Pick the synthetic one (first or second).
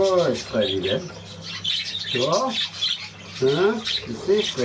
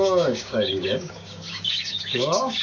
second